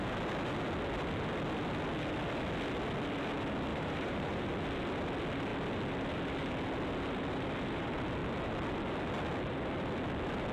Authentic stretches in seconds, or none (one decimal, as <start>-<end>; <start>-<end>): 0.0-3.7; 4.5-10.5